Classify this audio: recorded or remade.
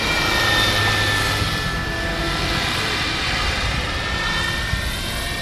recorded